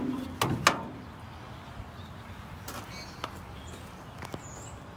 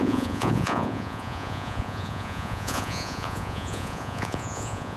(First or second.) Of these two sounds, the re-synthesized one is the second